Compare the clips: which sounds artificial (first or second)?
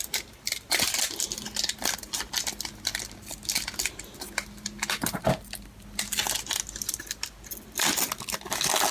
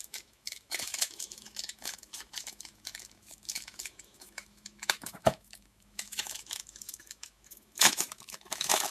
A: second